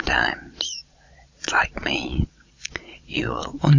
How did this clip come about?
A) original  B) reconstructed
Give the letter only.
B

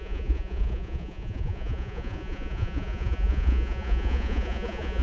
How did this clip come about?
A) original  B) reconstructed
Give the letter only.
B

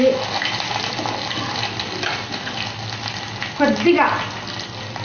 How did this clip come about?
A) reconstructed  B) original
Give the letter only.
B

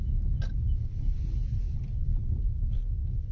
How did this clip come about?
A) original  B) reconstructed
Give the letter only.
A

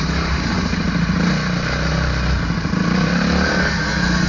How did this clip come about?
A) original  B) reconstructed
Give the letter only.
A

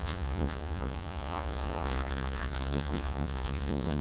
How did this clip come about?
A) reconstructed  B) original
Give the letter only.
A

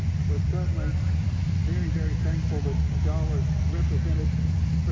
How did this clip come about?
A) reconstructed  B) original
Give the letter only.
B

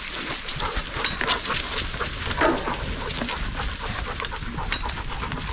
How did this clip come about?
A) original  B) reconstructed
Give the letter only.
A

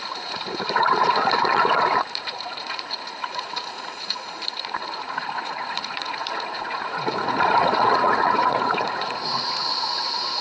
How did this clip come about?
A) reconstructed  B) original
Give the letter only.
A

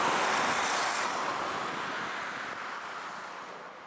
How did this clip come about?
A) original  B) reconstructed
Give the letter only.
A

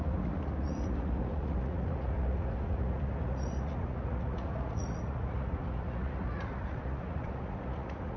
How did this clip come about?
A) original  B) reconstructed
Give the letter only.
B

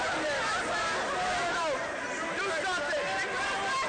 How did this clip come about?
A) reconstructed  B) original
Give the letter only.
B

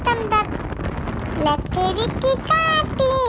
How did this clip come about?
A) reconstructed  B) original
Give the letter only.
B